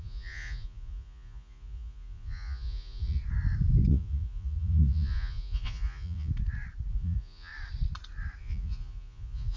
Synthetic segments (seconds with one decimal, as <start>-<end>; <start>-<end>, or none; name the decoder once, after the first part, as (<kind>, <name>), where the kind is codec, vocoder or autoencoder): 0.0-3.2 (vocoder, Vocos); 3.9-6.3; 6.9-7.5; 8.4-9.6